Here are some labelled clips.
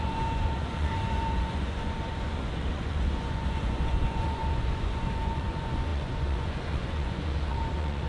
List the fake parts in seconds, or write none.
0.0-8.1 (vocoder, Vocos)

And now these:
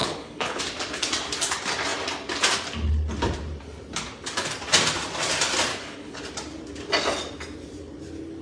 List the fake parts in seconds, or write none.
0.0-0.6 (codec, HILCodec); 5.7-6.2

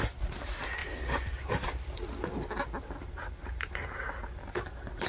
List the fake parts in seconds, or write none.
none

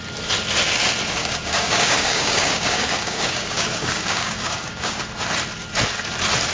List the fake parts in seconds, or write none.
1.2-5.1 (codec, DAC)

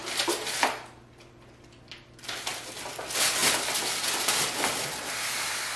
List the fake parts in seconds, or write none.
none

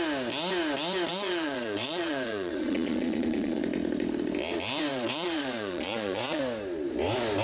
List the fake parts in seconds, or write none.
1.1-3.6 (vocoder, Vocos); 4.9-6.4

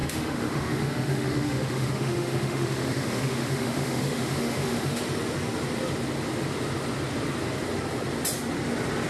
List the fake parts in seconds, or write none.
0.0-5.0 (autoencoder, DAC-VAE)